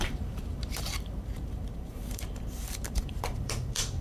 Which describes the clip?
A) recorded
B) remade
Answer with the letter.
B